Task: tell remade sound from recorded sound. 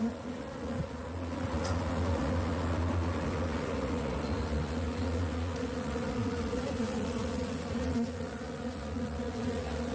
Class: remade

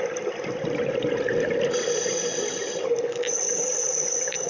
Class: recorded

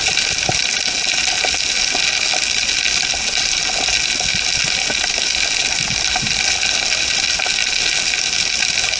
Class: recorded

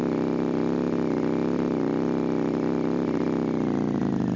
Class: recorded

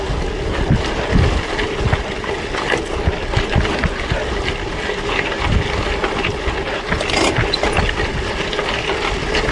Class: recorded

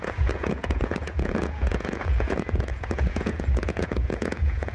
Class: remade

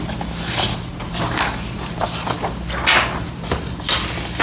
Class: recorded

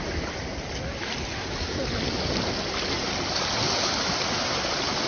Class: recorded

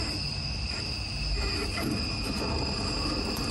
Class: recorded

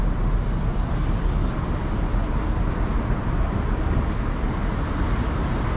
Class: recorded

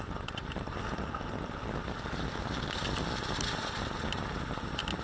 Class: recorded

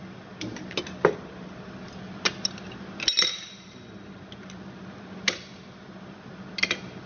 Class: recorded